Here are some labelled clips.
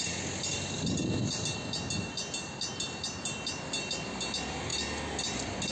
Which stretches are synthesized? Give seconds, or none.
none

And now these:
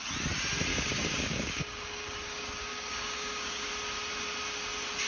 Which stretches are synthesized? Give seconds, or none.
0.7-3.7 (codec, DAC)

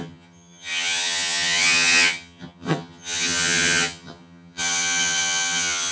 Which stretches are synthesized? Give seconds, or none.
0.0-5.9 (vocoder, HiFi-GAN)

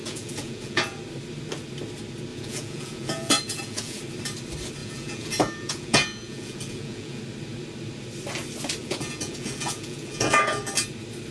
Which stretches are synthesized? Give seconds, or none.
0.0-1.0 (vocoder, Vocos); 2.3-4.0; 4.8-7.2; 8.8-10.6

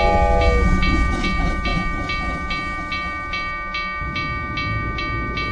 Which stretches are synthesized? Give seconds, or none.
none

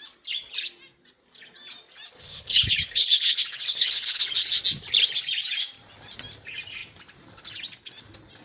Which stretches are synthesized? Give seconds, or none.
2.1-4.2 (codec, HILCodec)

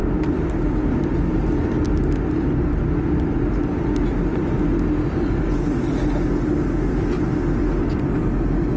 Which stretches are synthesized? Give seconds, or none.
0.0-4.4 (vocoder, BigVGAN v2); 6.9-8.2

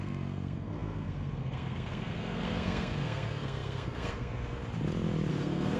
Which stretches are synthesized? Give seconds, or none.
0.0-4.6 (codec, SNAC); 5.3-5.8